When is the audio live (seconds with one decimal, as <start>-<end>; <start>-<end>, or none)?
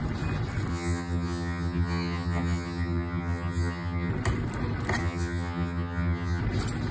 0.0-0.7; 4.1-5.0; 6.4-6.9